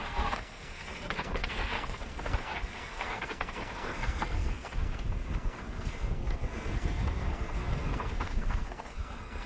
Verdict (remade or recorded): remade